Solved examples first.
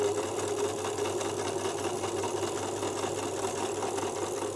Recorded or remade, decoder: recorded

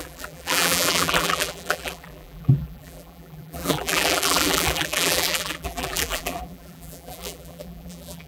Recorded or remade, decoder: remade, vocoder, BigVGAN v2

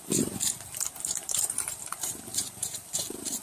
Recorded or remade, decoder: remade, vocoder, BigVGAN v2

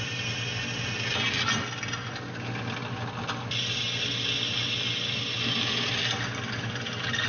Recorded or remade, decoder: recorded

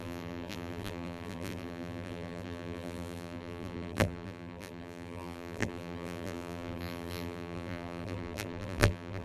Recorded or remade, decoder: remade, vocoder, BigVGAN v2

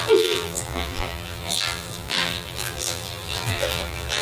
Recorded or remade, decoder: remade, vocoder, BigVGAN v2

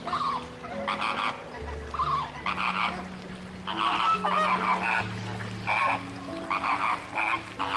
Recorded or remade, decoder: recorded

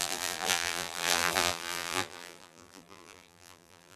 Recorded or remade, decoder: remade, vocoder, BigVGAN v2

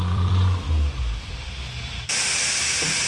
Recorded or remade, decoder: remade, vocoder, BigVGAN v2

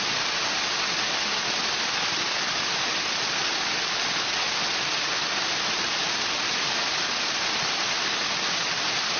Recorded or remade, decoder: recorded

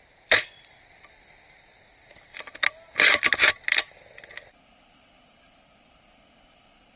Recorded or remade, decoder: remade, vocoder, BigVGAN v2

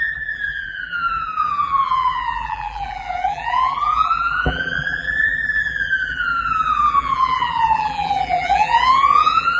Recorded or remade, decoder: remade, vocoder, BigVGAN v2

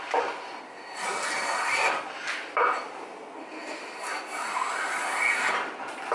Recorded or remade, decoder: recorded